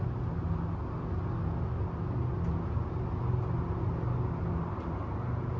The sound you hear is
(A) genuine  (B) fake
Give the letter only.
A